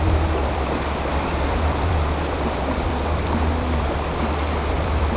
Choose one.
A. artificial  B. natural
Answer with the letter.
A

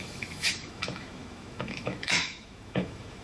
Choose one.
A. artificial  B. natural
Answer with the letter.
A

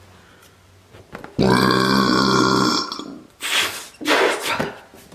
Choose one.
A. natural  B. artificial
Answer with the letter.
A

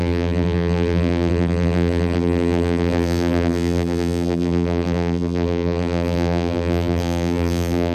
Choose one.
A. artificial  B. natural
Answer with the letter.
A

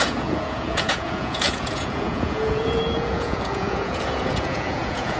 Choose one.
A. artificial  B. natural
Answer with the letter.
A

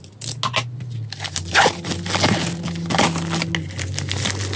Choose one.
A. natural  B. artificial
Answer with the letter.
A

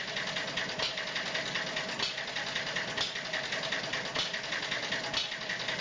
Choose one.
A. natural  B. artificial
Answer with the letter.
A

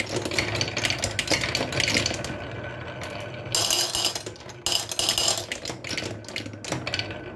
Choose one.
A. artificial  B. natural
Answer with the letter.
B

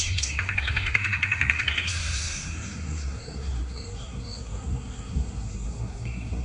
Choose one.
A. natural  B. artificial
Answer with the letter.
B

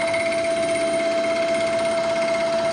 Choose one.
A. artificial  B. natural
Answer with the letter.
B